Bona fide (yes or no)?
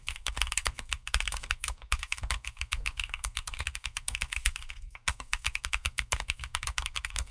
no